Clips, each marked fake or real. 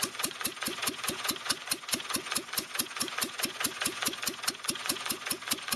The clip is fake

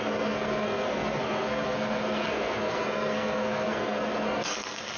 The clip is fake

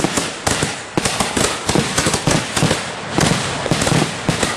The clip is real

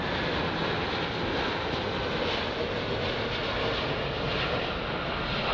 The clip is real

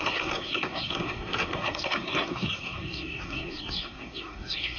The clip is fake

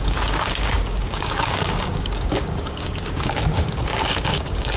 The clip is fake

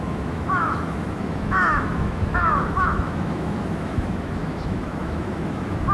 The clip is fake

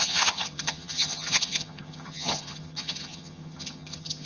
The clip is fake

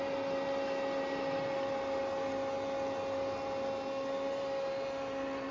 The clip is real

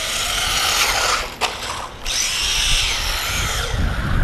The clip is real